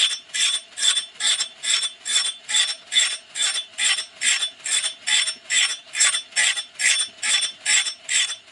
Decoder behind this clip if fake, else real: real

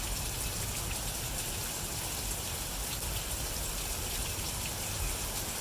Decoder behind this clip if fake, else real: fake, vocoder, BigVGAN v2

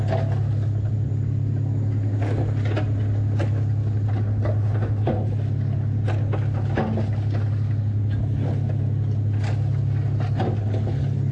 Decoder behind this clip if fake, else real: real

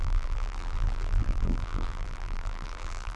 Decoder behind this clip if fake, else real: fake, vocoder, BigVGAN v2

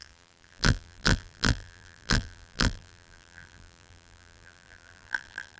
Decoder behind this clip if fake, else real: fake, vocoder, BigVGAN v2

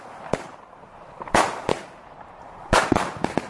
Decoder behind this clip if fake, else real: fake, vocoder, BigVGAN v2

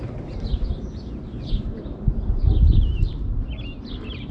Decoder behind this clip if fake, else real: fake, vocoder, BigVGAN v2